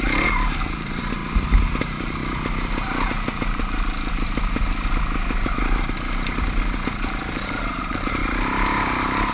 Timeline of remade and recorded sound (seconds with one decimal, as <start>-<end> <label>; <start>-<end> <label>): 0.0-1.2 remade; 1.2-1.8 recorded; 1.8-2.2 remade; 2.2-7.3 recorded; 7.3-8.2 remade; 8.2-9.3 recorded